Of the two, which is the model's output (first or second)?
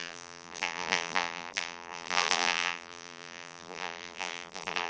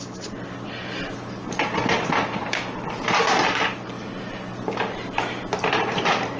first